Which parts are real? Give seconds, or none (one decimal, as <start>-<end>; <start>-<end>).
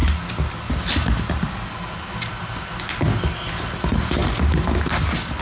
0.0-5.4